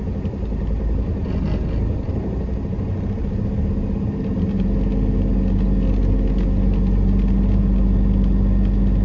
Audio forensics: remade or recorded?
recorded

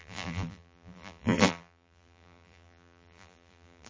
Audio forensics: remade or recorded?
remade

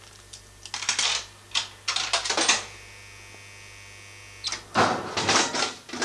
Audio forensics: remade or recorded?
recorded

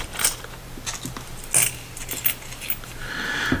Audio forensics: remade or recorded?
recorded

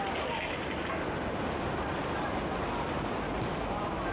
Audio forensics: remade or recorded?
recorded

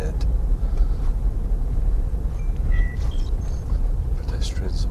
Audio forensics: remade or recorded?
remade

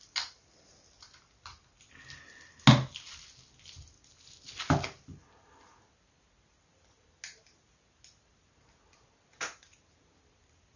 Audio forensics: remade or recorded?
recorded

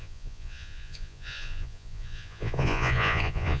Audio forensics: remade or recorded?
remade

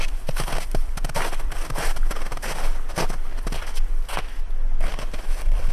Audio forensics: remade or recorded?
recorded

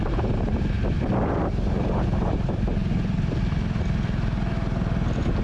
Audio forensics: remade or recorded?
recorded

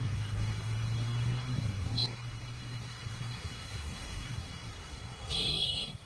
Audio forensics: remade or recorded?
remade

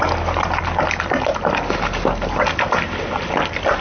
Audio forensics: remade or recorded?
recorded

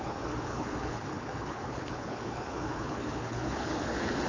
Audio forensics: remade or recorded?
remade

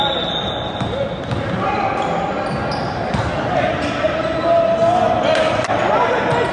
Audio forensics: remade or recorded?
recorded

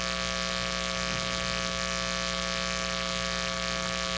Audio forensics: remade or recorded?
recorded